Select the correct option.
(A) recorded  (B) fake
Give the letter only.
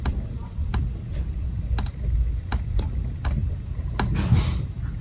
A